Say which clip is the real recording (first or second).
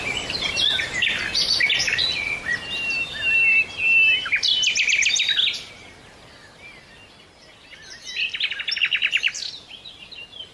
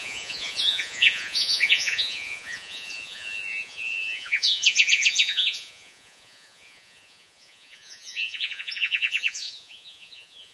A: first